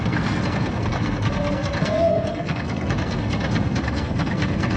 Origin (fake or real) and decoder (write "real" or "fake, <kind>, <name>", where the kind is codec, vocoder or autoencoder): fake, codec, SNAC